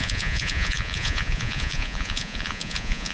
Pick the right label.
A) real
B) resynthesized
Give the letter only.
B